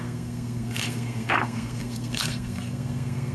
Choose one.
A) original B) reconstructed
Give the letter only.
B